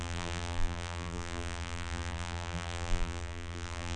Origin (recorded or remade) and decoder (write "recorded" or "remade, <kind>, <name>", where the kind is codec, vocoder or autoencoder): remade, vocoder, BigVGAN v2